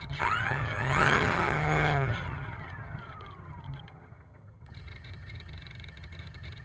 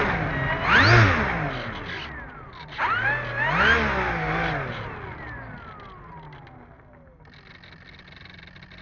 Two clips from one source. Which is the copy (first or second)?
first